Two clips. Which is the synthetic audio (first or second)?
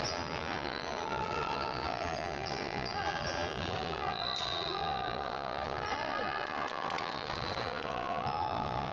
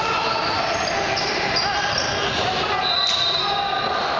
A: first